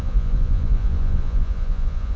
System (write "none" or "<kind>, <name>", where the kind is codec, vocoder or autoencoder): vocoder, Vocos